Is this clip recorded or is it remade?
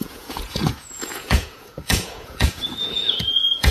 remade